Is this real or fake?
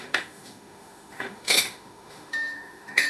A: fake